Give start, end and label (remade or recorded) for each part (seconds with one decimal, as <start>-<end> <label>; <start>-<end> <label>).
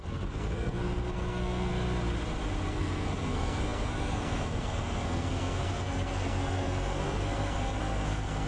0.0-1.7 remade; 1.7-2.7 recorded; 2.7-8.5 remade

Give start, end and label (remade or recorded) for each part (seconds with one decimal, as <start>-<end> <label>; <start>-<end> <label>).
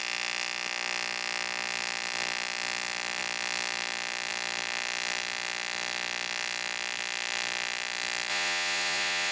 0.0-8.3 recorded; 8.3-9.3 remade